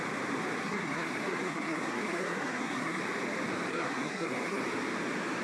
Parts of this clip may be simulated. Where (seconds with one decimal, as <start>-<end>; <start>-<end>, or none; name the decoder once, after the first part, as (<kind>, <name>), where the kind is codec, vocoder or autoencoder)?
0.6-3.0 (codec, SNAC); 3.7-4.6